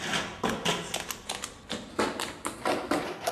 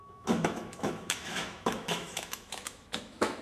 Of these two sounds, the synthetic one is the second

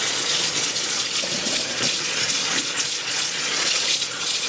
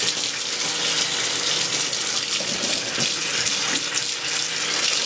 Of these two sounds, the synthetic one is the first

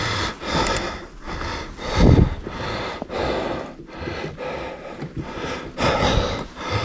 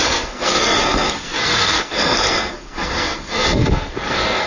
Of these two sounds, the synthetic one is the second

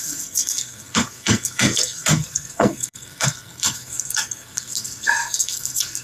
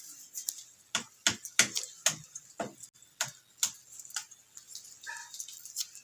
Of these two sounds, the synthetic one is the first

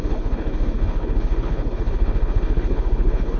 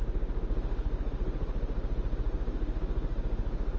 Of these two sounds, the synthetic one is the first